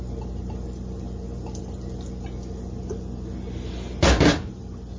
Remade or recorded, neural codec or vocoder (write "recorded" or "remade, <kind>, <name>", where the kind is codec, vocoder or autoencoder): recorded